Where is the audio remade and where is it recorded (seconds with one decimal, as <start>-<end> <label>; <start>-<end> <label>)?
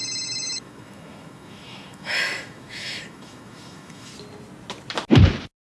0.0-4.1 remade; 4.1-5.6 recorded